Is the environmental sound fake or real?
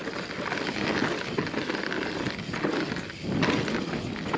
real